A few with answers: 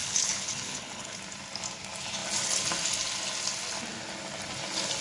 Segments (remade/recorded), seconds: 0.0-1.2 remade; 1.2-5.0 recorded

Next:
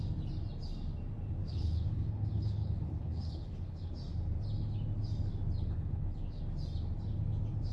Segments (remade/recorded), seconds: 0.0-1.4 recorded; 1.4-3.9 remade; 3.9-5.6 recorded; 5.6-6.4 remade; 6.4-7.7 recorded

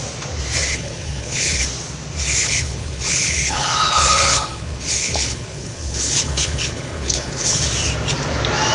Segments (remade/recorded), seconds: 0.0-0.7 recorded; 0.7-1.6 remade; 1.6-2.4 recorded; 2.4-7.6 remade; 7.6-8.7 recorded